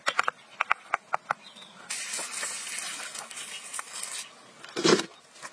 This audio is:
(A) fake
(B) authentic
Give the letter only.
B